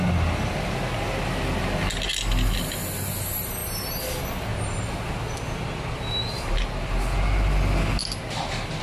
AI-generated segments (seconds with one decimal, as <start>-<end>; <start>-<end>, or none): none